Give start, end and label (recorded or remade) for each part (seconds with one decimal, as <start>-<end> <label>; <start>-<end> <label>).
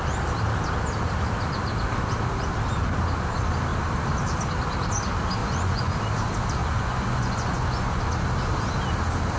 0.0-5.4 recorded; 5.4-5.9 remade; 5.9-6.6 recorded; 6.6-8.0 remade; 8.0-9.4 recorded